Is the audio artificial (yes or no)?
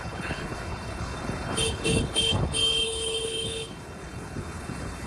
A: yes